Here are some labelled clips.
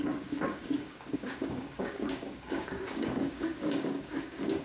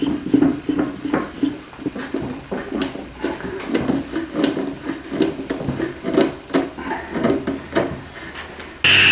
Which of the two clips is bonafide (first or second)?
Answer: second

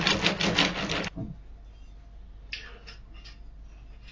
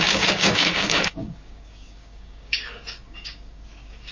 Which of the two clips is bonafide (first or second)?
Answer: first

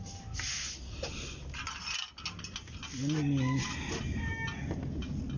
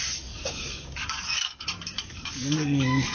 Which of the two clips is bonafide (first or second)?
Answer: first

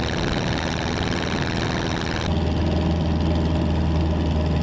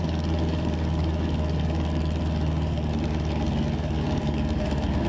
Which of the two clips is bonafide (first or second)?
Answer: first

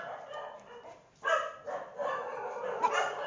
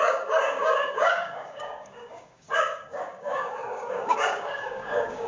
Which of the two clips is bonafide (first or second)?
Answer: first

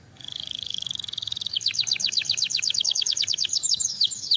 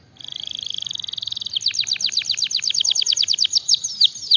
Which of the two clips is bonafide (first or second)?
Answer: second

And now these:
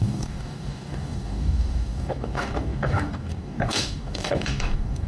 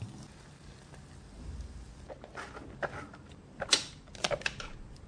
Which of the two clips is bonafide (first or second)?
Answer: second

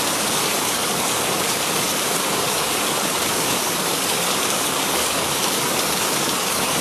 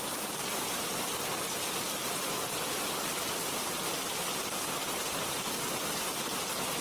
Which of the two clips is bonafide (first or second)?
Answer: second